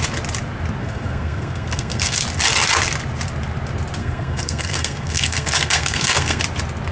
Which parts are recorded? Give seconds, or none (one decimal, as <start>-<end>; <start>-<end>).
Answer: 0.0-0.8; 2.2-4.0; 6.4-6.9

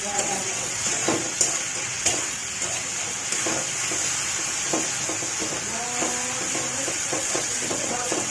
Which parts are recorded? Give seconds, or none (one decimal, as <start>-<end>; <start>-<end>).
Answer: 1.0-1.8; 2.4-6.9

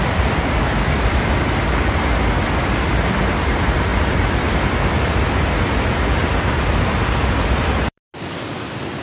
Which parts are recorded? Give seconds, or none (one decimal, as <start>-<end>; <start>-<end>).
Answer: 0.0-3.9; 4.6-9.0

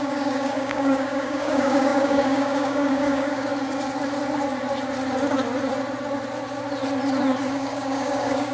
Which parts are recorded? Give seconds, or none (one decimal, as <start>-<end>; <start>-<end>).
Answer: 3.5-7.5

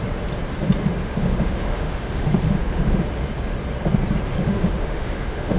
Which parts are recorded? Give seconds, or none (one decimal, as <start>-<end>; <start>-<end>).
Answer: 0.0-1.0; 3.0-4.4